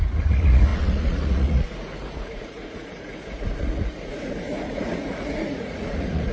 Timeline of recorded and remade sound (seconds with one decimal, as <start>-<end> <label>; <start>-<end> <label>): 0.0-6.3 remade